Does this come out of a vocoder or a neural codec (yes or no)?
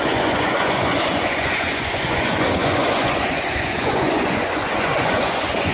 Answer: yes